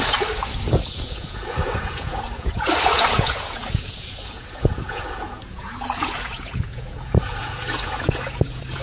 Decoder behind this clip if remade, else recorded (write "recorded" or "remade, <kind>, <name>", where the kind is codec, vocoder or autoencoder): remade, vocoder, Vocos